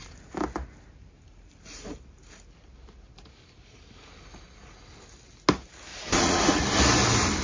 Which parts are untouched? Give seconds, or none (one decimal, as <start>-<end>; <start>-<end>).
0.0-5.9; 6.6-7.4